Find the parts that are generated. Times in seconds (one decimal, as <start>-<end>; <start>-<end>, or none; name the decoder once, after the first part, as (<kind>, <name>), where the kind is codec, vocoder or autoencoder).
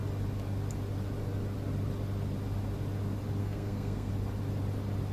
3.4-4.1 (codec, SNAC)